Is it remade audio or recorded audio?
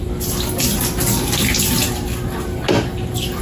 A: recorded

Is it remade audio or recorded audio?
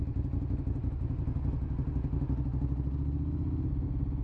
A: recorded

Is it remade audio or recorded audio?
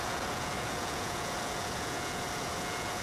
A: remade